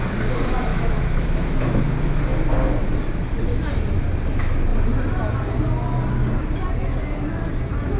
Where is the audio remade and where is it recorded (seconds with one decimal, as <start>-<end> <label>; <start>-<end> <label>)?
0.0-0.7 recorded; 0.7-1.6 remade; 1.6-8.0 recorded